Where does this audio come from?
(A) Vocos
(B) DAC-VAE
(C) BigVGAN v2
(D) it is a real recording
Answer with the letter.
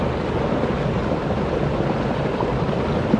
D